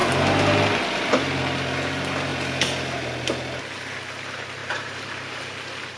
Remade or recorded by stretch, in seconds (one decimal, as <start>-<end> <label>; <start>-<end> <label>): 0.0-4.6 recorded; 4.6-5.4 remade; 5.4-6.0 recorded